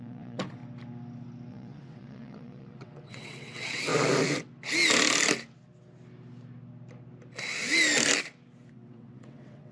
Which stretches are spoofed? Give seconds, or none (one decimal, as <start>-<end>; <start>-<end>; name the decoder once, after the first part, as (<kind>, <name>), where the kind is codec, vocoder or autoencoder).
0.0-0.6 (vocoder, WaveNeXt); 1.5-3.9; 8.7-9.7